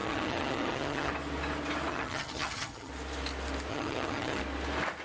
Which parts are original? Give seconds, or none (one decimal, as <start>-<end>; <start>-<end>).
1.1-1.9; 2.9-3.7; 4.4-5.0